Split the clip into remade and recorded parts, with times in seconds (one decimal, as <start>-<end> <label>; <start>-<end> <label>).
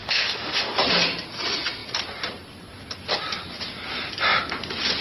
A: 0.0-0.7 remade; 0.7-5.0 recorded